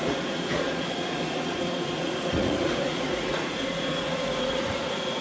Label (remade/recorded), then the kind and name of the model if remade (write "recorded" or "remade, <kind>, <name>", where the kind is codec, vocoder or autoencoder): remade, vocoder, Vocos